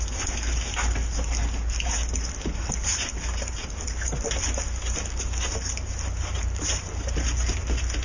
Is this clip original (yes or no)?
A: yes